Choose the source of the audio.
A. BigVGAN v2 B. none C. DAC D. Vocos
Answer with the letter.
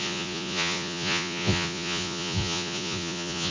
D